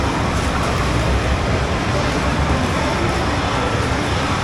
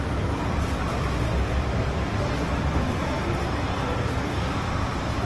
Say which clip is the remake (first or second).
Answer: first